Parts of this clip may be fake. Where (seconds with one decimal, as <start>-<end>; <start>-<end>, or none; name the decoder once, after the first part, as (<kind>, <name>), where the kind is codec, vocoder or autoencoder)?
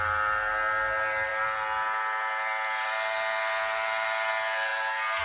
none